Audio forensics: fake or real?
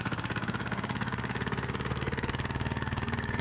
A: fake